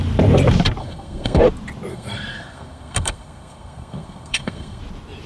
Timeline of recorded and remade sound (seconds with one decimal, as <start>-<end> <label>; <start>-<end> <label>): 0.0-0.8 recorded; 0.8-1.4 remade; 1.4-1.9 recorded; 1.9-4.8 remade; 4.8-5.3 recorded